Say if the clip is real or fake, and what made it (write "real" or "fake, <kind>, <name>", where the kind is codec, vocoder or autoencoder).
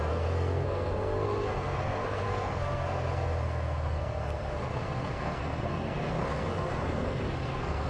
fake, codec, SNAC